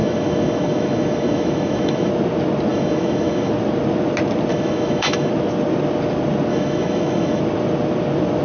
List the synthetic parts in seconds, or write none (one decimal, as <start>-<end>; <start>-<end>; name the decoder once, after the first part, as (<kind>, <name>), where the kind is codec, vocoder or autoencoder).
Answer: 0.0-2.1 (autoencoder, DAC-VAE); 2.7-3.5; 4.5-5.3; 6.5-7.4